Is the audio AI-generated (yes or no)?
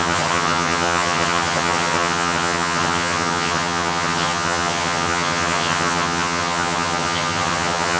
yes